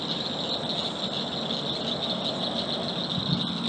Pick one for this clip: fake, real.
real